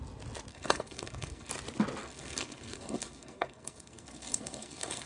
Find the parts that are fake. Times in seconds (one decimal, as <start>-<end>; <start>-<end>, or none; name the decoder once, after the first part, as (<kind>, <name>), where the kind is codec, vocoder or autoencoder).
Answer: 0.5-1.5 (codec, SNAC); 2.0-5.1